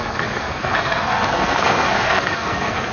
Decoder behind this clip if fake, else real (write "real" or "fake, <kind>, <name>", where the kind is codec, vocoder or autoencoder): fake, codec, SNAC